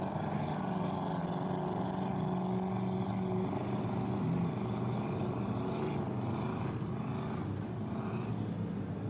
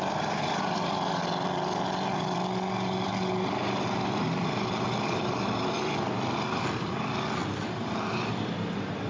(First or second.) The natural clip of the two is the first